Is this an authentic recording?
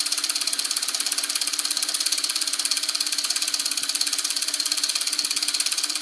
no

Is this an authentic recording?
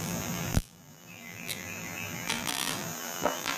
no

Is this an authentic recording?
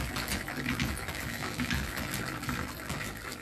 no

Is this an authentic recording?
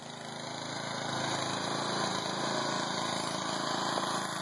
yes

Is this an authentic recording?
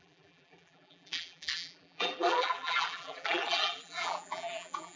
no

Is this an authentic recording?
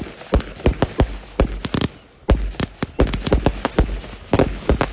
yes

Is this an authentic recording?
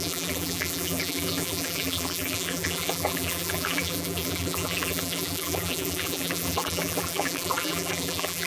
no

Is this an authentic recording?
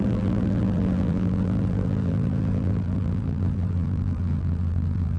no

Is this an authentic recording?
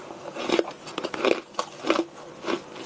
yes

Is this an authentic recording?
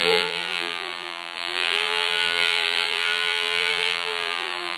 no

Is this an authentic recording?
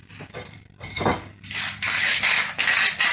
no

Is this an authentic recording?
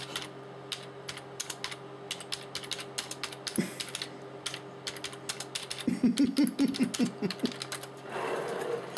yes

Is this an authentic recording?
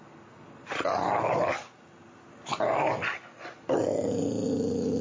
yes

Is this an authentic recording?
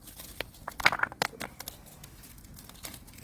yes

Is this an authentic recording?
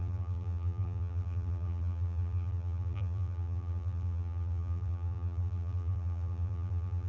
no